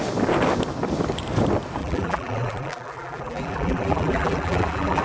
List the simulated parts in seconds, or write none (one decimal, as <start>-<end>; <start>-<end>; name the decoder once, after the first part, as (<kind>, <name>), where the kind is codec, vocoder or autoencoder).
1.8-5.0 (vocoder, BigVGAN v2)